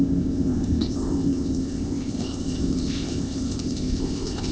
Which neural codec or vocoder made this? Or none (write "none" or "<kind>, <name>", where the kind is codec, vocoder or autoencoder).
codec, ZipCodec